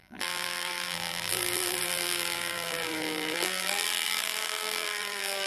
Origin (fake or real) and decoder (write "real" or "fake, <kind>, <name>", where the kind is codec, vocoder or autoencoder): fake, vocoder, BigVGAN v2